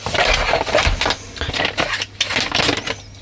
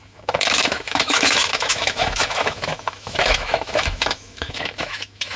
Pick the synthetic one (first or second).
second